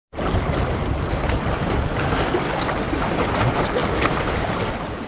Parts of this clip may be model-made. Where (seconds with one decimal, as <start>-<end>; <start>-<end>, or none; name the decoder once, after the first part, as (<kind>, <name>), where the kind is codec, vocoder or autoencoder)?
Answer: 3.8-5.1 (vocoder, BigVGAN v2)

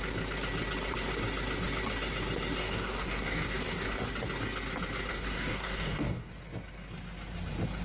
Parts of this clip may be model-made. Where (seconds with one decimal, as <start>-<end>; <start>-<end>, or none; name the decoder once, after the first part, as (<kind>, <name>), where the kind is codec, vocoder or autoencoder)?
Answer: 2.6-4.1 (codec, DAC); 5.1-6.3

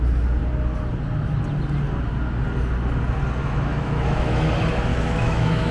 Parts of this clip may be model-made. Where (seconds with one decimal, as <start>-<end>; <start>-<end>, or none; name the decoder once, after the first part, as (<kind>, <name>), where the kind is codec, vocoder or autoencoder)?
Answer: 3.4-4.5 (autoencoder, DAC-VAE); 4.9-5.7

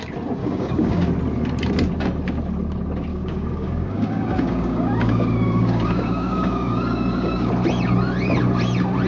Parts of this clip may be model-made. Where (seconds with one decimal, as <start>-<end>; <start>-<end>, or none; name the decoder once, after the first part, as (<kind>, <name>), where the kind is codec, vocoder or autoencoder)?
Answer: 0.4-1.1 (codec, DAC); 3.1-7.5

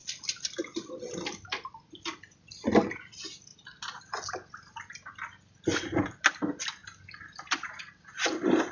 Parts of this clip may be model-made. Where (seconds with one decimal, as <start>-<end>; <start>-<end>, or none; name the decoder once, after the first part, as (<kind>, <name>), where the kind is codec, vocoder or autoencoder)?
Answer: none